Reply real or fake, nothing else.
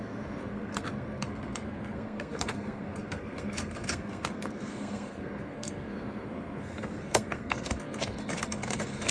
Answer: fake